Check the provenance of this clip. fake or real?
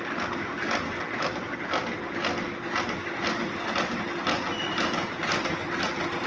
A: real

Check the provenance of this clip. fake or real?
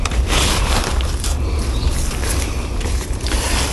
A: real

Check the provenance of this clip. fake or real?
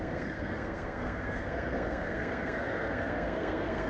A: fake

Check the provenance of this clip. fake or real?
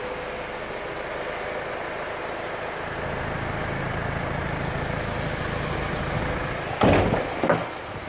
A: real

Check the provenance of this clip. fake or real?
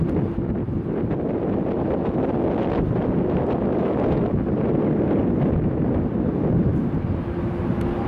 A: real